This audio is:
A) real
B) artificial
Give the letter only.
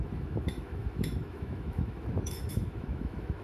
B